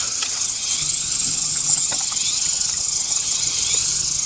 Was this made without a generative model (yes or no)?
no